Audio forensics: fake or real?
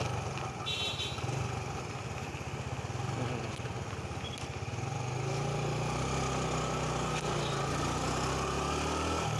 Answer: real